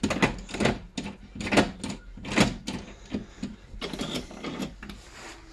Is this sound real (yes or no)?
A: yes